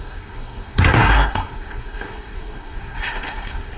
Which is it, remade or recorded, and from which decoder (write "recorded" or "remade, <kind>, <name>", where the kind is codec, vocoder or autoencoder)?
remade, codec, SNAC